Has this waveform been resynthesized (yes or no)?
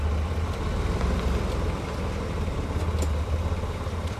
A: yes